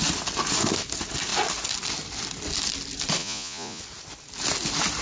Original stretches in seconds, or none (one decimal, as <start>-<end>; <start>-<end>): 0.0-3.2; 3.8-5.0